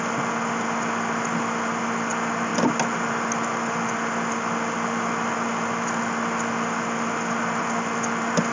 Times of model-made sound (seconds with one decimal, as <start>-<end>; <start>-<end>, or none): none